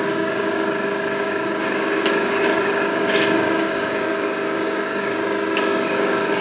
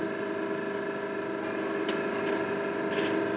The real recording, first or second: second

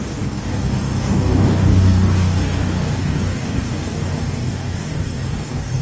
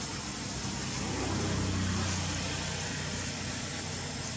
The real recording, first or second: second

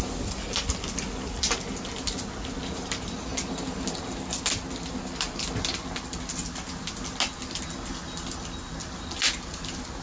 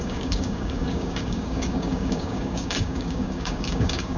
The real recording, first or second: first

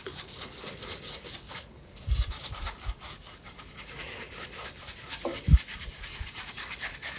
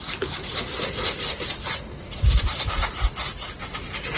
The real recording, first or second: second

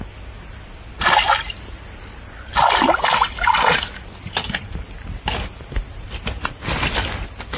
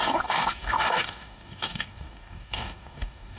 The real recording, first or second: first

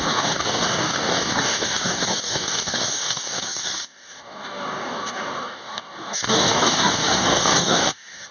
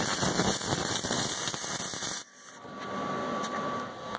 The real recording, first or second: second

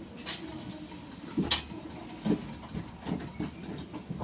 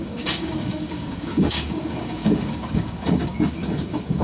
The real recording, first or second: first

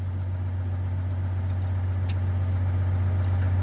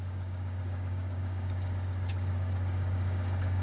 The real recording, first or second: first